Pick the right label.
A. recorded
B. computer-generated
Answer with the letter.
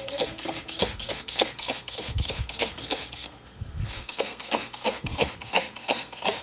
B